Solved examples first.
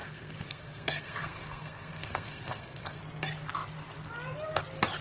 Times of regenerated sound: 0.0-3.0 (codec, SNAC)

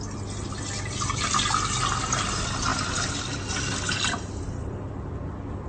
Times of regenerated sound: none

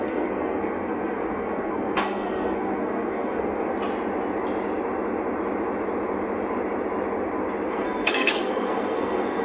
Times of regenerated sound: 0.0-3.7 (codec, SNAC); 7.7-9.4

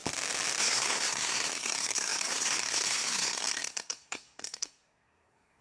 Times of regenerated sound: 0.6-5.6 (codec, SNAC)

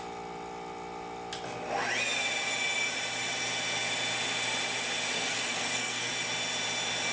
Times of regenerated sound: 5.1-6.1 (codec, SNAC)

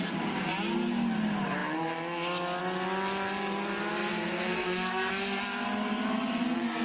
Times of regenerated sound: 4.0-5.1 (codec, SNAC)

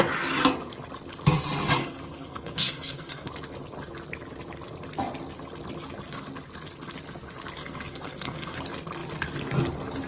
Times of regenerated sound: 1.8-3.3 (codec, SNAC); 7.6-8.6